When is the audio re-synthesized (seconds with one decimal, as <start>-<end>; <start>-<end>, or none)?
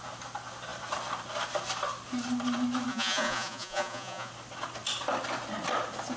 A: 2.9-4.3